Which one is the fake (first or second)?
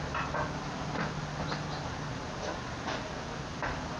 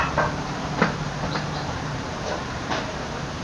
second